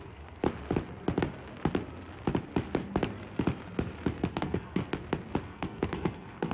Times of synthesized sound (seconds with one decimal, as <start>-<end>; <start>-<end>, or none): 0.0-0.4; 4.3-4.8; 5.4-6.5